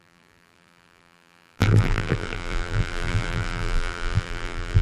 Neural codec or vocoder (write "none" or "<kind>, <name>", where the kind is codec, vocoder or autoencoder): vocoder, BigVGAN v2